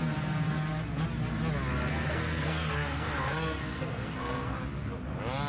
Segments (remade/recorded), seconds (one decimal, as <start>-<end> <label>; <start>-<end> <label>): 0.0-1.9 recorded; 1.9-4.6 remade; 4.6-5.5 recorded